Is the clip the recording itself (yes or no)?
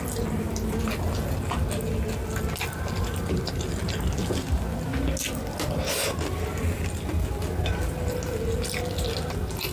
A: yes